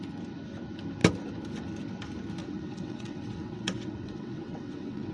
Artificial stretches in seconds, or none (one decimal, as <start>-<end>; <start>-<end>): 2.4-5.1